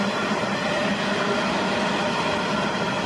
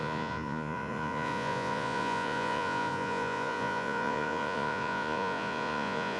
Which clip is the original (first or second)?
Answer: first